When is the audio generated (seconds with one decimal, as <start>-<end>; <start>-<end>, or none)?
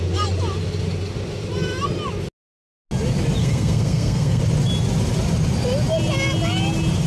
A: 3.4-4.4